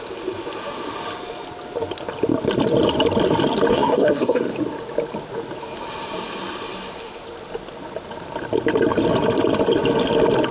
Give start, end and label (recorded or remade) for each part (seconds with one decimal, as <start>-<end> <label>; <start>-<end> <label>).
0.0-3.7 recorded; 3.7-4.5 remade; 4.5-10.5 recorded